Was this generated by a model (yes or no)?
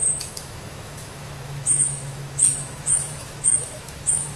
yes